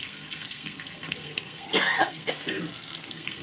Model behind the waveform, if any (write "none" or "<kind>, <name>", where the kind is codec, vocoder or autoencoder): codec, SNAC